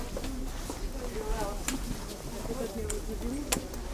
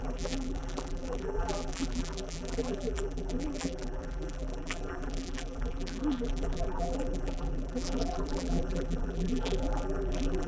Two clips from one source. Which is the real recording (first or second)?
first